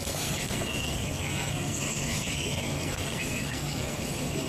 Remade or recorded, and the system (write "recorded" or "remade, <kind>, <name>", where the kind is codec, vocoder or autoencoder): remade, codec, SNAC